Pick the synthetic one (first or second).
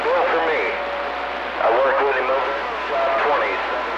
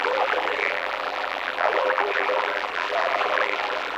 second